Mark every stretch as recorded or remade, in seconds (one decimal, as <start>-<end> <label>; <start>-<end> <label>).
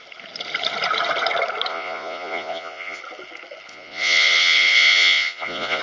0.0-1.7 recorded; 1.7-3.0 remade; 3.0-3.7 recorded; 3.7-5.8 remade